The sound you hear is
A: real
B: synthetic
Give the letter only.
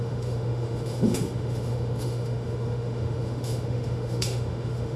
B